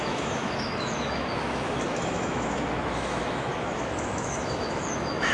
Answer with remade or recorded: remade